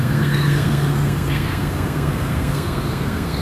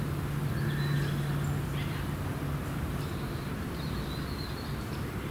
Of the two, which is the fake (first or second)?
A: first